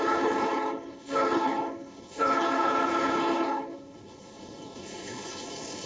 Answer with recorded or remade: remade